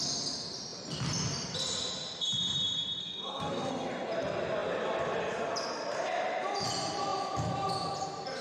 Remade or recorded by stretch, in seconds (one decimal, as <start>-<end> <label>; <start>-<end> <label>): 0.0-3.0 recorded; 3.0-3.7 remade; 3.7-8.4 recorded